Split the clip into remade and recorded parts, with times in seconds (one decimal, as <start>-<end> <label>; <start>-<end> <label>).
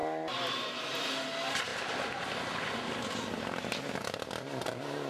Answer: 0.0-5.1 recorded